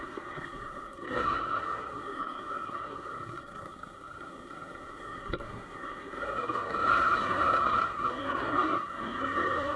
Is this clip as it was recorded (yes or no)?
no